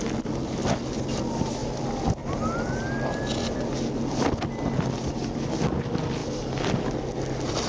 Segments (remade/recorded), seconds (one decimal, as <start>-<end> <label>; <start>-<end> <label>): 0.0-7.7 recorded